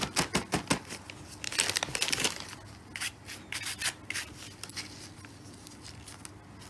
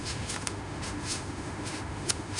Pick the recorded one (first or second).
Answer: first